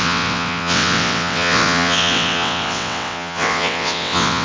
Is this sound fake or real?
fake